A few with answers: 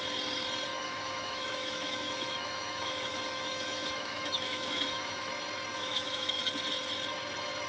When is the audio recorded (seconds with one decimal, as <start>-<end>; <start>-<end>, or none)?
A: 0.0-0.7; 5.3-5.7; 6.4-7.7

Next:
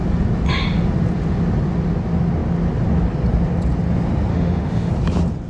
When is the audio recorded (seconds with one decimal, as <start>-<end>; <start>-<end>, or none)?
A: 0.0-4.3; 4.9-5.5

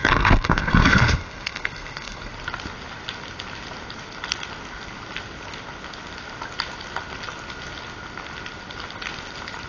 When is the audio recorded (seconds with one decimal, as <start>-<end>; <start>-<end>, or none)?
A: 2.3-9.7